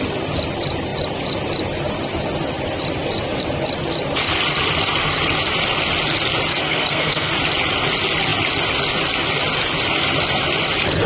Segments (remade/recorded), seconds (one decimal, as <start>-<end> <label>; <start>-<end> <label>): 0.0-6.6 recorded; 6.6-7.3 remade; 7.3-11.1 recorded